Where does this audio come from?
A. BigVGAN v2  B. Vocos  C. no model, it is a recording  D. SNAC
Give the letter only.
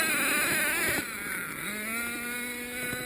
C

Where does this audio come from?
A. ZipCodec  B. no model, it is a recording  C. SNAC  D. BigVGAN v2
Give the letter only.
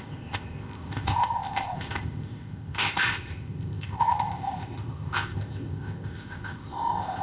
A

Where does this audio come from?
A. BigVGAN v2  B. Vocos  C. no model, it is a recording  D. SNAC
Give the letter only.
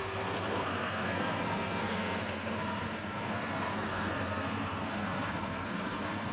D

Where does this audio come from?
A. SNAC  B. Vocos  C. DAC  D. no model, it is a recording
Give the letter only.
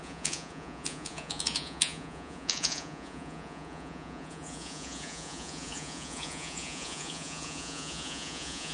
B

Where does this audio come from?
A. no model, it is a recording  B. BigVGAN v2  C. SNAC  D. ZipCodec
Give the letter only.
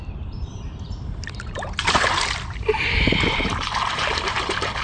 B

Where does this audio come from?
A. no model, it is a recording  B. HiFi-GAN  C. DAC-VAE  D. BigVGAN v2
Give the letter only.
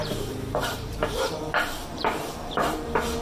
D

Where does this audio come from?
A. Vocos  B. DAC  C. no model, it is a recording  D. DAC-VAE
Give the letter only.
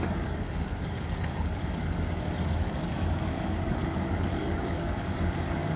B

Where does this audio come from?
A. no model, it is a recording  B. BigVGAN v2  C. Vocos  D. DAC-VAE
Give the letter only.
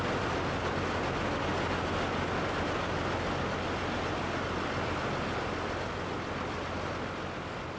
A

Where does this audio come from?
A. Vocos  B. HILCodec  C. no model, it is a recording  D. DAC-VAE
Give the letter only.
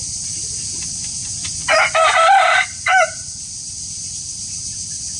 C